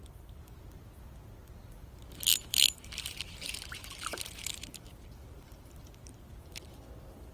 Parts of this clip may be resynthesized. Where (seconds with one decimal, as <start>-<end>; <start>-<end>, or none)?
0.0-0.7; 2.3-6.7